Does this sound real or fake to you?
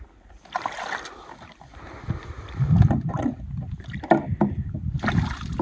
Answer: real